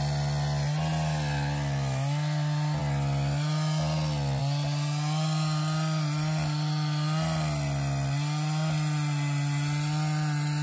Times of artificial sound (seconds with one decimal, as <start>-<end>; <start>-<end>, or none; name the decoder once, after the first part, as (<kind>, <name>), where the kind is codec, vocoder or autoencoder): none